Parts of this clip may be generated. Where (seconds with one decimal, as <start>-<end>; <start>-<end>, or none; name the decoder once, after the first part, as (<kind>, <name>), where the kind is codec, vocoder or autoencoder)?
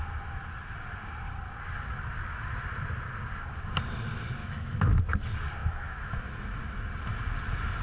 4.4-5.0 (autoencoder, DAC-VAE); 5.6-6.6